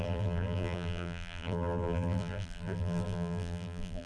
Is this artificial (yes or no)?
yes